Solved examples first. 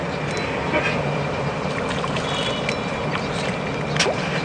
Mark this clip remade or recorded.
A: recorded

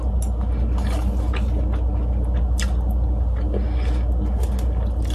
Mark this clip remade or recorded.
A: recorded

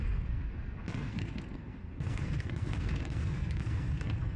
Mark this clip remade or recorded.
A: remade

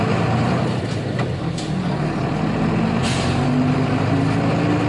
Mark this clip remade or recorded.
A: recorded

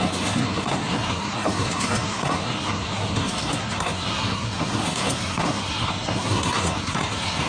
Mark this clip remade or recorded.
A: remade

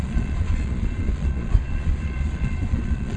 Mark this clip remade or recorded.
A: remade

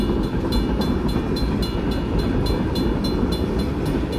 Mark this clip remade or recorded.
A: recorded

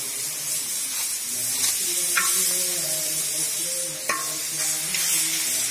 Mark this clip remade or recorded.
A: recorded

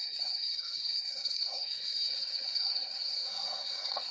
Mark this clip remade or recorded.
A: remade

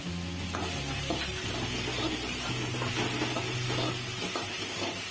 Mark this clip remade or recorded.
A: recorded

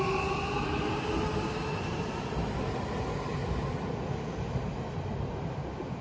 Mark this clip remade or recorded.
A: recorded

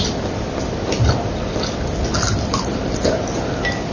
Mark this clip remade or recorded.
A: recorded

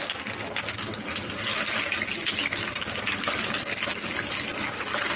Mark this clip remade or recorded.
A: recorded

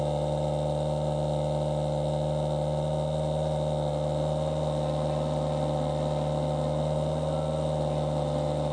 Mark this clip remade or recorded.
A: recorded